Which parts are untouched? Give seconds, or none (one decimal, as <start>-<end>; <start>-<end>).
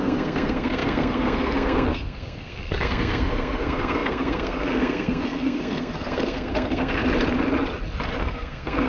7.0-8.2